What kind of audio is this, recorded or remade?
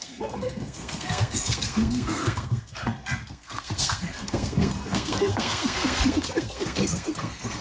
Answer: remade